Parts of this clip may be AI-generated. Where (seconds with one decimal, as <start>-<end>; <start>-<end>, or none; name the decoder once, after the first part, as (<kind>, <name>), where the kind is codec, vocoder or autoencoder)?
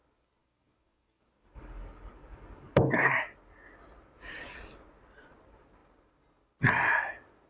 0.4-3.2 (codec, DAC)